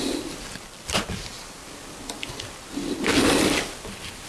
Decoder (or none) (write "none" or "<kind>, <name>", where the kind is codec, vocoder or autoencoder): none